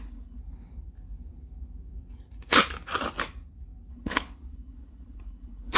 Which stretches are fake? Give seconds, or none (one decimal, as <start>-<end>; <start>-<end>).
0.0-0.4; 3.9-5.8